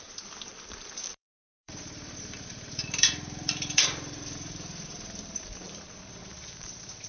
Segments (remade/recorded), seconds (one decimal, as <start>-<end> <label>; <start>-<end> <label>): 0.0-7.1 remade